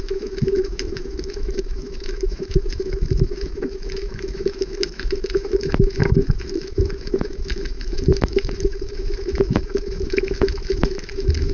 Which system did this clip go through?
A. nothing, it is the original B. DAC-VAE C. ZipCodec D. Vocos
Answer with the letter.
B